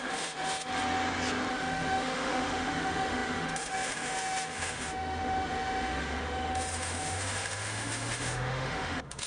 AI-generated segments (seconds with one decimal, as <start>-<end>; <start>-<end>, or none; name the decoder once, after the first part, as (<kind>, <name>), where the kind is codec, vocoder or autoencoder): 0.0-0.7 (autoencoder, DAC-VAE); 1.5-9.3